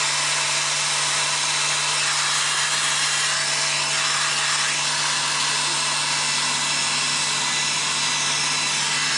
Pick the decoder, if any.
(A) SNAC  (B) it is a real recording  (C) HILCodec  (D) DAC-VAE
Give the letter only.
B